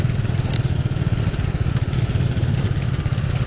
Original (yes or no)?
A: yes